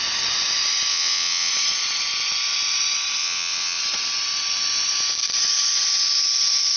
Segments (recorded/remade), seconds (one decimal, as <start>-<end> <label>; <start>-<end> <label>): 0.0-0.9 recorded; 0.9-1.5 remade; 1.5-3.2 recorded; 3.2-3.8 remade; 3.8-6.8 recorded